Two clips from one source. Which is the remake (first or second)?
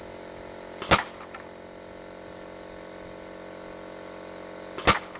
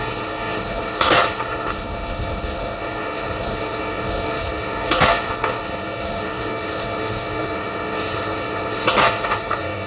second